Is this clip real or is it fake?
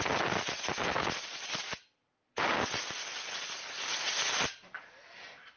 real